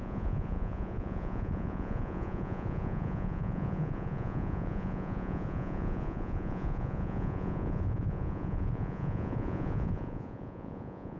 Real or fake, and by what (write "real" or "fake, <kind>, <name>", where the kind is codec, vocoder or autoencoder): fake, vocoder, Vocos